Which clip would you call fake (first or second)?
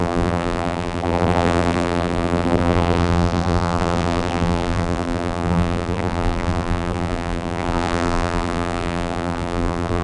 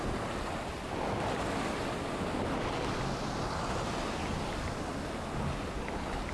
first